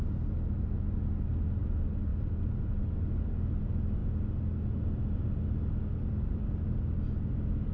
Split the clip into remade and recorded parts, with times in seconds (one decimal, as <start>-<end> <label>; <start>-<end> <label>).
0.0-7.7 recorded